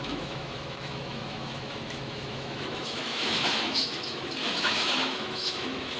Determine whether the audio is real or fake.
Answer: fake